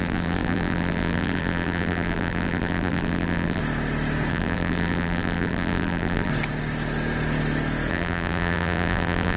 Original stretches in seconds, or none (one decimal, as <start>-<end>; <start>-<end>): 3.6-4.3; 6.3-7.9